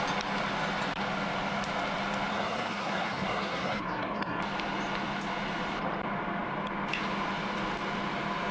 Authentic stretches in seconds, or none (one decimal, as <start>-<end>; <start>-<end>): 0.0-2.3; 4.4-8.5